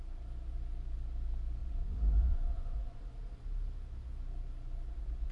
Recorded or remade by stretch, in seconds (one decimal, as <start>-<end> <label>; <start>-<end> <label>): 0.0-1.6 recorded; 1.6-3.0 remade; 3.0-5.3 recorded